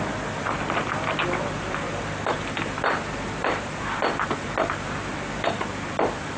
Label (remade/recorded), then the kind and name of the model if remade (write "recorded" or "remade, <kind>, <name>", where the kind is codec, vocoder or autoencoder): recorded